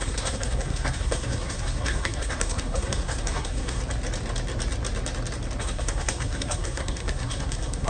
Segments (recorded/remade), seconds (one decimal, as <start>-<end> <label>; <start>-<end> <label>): 0.0-3.8 remade; 3.8-5.6 recorded; 5.6-7.9 remade